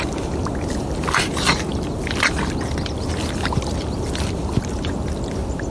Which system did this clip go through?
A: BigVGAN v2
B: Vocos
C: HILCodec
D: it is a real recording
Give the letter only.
D